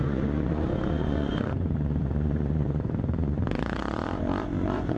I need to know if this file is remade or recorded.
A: remade